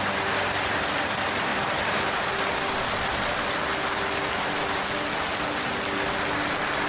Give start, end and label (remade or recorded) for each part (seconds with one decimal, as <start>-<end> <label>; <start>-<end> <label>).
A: 0.0-6.9 recorded